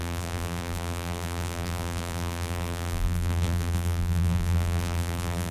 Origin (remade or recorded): remade